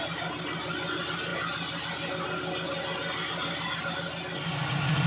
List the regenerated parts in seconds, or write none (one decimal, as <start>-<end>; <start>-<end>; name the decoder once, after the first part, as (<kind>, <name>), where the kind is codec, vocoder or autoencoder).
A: none